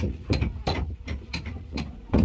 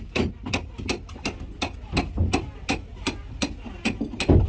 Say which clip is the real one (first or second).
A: second